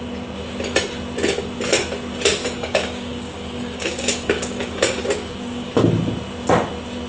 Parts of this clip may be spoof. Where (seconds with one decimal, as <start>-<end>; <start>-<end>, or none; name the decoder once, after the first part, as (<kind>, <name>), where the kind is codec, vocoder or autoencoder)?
2.4-5.7 (codec, DAC)